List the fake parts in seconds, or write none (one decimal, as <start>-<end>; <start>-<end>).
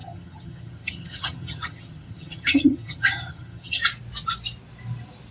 0.0-3.8